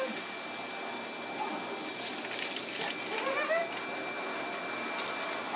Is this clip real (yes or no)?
yes